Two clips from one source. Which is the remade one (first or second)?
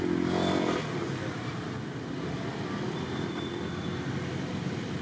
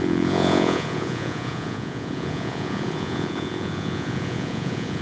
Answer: second